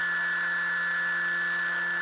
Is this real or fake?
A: real